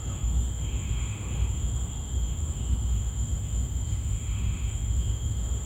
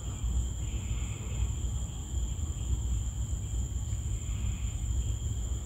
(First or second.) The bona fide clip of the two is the second